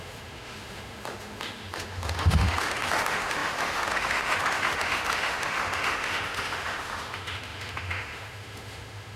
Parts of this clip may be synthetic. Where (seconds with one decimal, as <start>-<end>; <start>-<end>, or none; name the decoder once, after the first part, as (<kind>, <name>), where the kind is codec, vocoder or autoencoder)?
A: 0.0-9.2 (autoencoder, DAC-VAE)